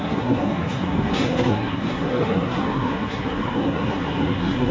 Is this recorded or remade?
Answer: remade